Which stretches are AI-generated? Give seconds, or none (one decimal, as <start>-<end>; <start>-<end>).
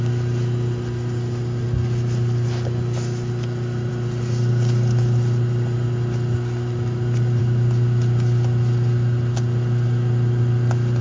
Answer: none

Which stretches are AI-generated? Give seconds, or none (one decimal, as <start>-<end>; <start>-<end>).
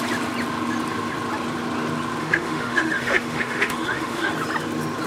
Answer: 2.2-4.3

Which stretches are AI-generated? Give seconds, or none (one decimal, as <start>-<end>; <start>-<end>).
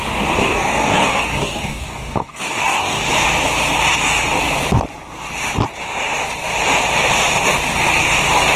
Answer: 0.4-3.0